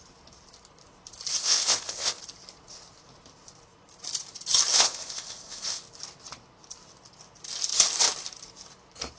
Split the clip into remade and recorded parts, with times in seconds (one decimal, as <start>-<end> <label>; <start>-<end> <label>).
0.0-1.3 recorded; 1.3-2.2 remade; 2.2-4.7 recorded; 4.7-5.8 remade; 5.8-9.2 recorded